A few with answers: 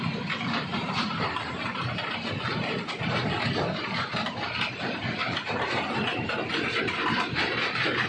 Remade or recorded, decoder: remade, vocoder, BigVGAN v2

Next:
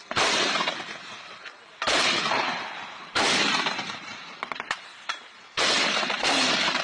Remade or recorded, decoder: remade, vocoder, BigVGAN v2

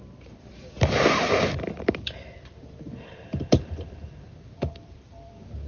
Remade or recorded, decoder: remade, vocoder, BigVGAN v2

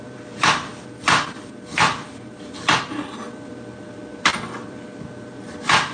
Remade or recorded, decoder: remade, vocoder, BigVGAN v2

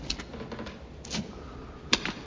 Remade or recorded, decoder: recorded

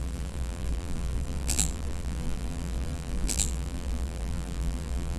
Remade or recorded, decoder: remade, vocoder, BigVGAN v2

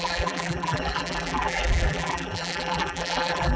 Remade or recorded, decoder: remade, vocoder, BigVGAN v2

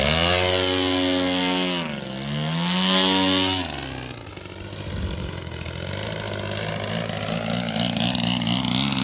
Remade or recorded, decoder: recorded